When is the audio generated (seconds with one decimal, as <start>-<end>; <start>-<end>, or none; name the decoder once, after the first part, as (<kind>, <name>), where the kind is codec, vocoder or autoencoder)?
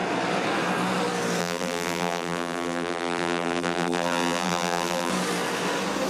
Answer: 1.4-5.1 (vocoder, BigVGAN v2)